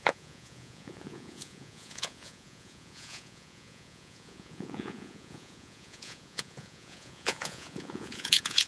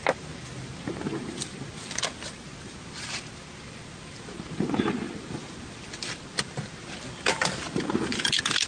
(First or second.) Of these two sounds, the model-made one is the first